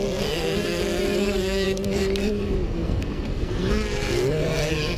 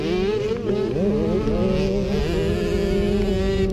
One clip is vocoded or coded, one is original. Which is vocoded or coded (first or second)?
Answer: first